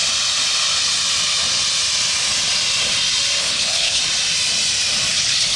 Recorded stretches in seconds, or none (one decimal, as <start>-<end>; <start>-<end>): 0.0-3.4; 4.0-5.1